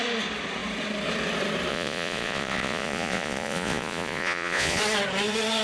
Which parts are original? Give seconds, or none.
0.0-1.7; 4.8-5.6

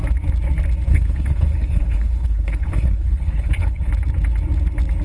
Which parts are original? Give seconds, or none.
0.0-0.9; 3.9-5.0

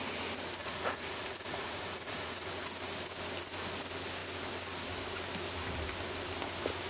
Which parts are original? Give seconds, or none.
0.0-0.6; 2.5-6.9

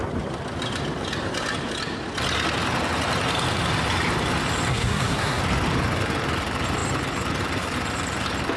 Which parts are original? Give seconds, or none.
0.0-4.7; 5.4-8.6

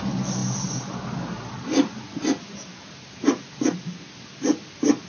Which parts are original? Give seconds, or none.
0.0-5.1

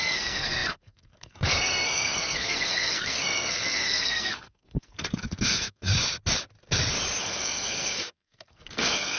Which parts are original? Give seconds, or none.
5.9-7.2

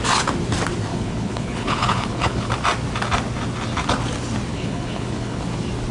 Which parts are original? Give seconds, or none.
0.0-0.9; 2.5-4.5; 5.4-5.9

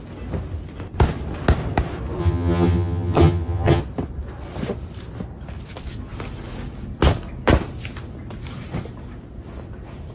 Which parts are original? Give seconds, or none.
0.0-2.2; 3.8-10.1